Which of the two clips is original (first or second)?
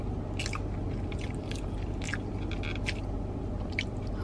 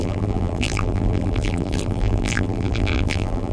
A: first